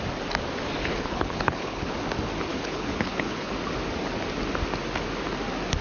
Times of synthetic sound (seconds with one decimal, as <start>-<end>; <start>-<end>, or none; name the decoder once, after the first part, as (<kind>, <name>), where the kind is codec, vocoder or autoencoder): 0.8-1.9 (codec, HILCodec); 2.5-3.5